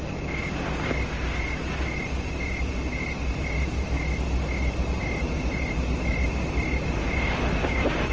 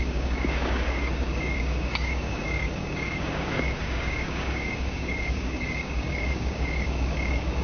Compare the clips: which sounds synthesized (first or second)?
second